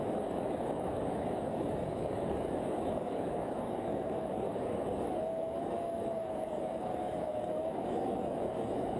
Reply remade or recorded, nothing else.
remade